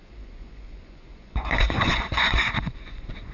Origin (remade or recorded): remade